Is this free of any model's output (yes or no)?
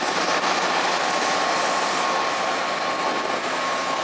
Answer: yes